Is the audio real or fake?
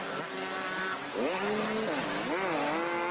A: real